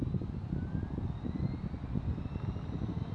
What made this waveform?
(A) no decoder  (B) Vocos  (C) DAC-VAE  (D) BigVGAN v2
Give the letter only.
A